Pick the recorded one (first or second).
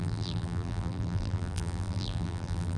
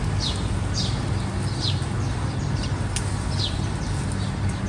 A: second